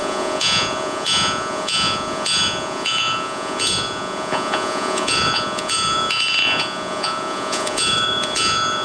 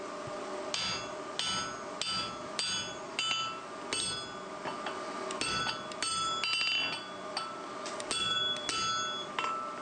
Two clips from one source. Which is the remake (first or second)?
first